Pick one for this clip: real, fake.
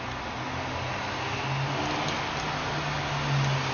real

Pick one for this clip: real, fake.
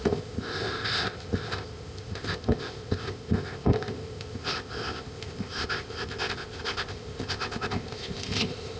fake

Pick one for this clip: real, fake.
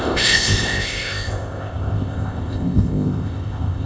fake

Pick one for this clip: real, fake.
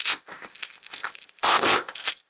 fake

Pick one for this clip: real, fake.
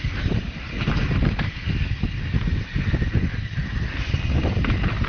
real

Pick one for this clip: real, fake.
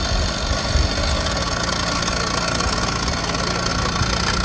real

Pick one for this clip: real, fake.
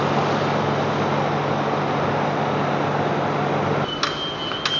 real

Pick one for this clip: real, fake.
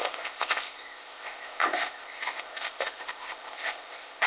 fake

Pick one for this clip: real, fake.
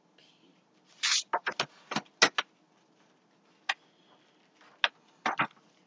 real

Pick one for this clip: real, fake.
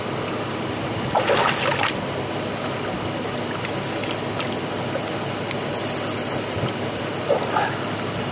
real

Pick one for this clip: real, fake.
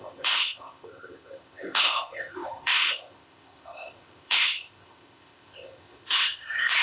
fake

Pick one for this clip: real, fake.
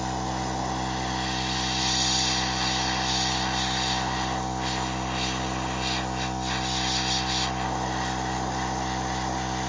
real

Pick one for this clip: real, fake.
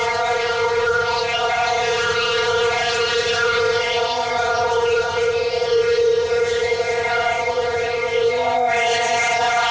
fake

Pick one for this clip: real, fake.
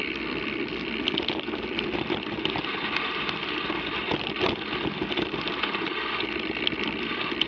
real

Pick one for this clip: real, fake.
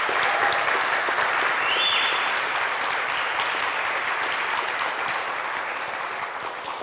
real